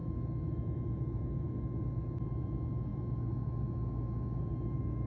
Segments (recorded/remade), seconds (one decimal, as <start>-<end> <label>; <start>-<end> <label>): 0.0-1.8 remade; 1.8-2.9 recorded; 2.9-5.1 remade